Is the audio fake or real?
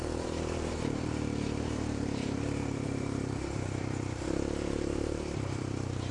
fake